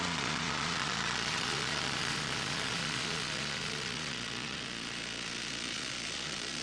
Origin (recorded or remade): remade